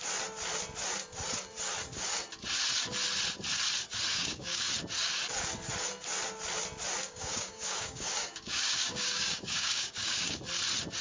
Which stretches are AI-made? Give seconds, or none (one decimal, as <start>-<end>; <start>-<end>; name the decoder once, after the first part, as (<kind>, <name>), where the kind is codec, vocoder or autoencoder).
4.1-4.7 (codec, DAC); 7.0-10.4